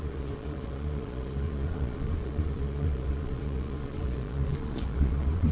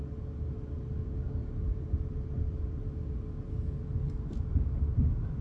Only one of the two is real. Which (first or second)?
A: second